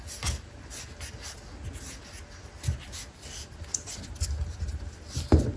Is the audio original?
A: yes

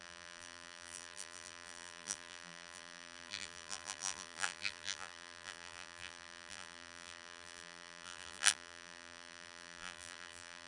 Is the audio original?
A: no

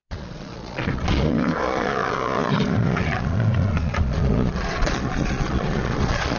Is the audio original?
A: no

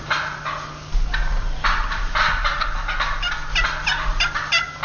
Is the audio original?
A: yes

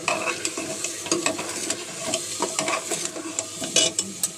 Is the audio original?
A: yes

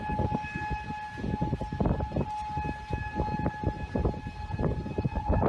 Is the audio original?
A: yes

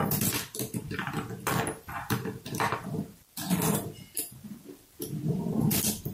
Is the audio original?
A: no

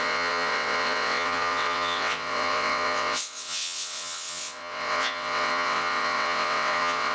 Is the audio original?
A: no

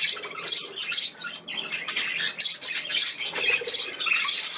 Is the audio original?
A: yes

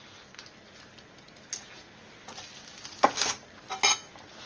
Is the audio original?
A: yes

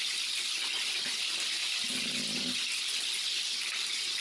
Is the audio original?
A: yes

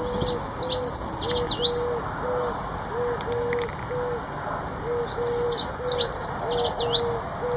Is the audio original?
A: yes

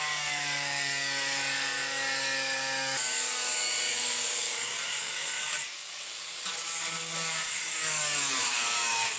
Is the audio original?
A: no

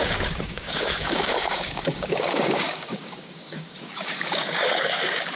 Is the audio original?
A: no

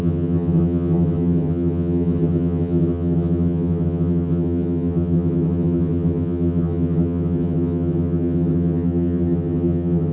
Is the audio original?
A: no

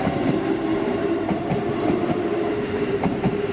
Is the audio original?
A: no